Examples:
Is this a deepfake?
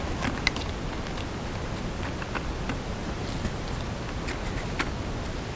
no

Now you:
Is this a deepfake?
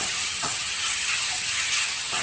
yes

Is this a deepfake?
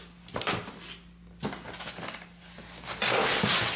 no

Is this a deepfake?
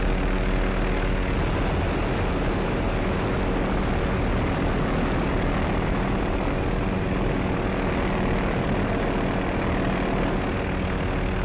no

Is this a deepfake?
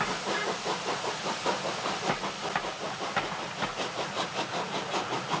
no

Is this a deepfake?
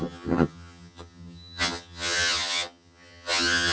yes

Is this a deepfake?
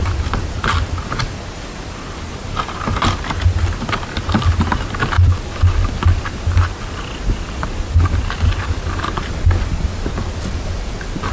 no